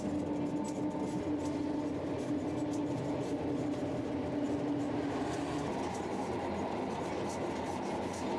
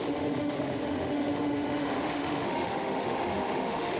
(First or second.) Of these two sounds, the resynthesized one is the second